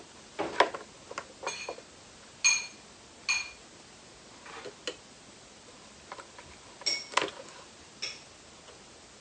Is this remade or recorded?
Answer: recorded